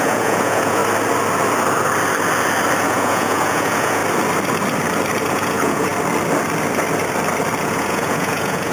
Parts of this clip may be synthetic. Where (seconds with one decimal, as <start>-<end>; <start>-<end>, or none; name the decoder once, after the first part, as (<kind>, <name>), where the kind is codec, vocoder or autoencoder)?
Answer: 0.0-0.8 (vocoder, Vocos); 2.8-4.0; 5.3-5.9; 7.6-8.7